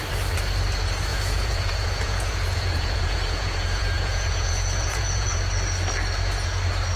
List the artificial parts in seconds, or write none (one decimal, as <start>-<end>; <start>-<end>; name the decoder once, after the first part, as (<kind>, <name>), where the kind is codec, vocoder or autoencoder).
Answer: 1.1-5.3 (vocoder, Vocos)